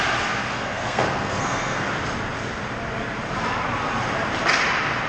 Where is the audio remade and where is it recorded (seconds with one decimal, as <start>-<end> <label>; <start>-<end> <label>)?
0.0-0.5 recorded; 0.5-1.9 remade; 1.9-5.1 recorded

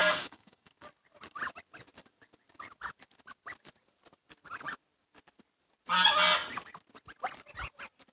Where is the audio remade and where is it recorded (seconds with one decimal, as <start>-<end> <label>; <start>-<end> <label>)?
0.0-0.7 remade; 0.7-8.1 recorded